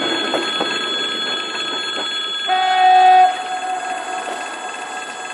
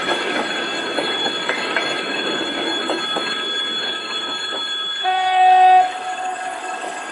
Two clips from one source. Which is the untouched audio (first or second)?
first